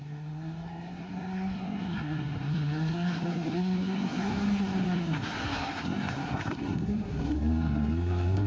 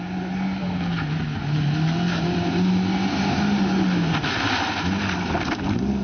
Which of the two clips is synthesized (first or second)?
first